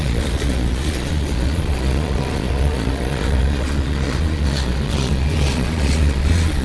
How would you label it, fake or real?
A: fake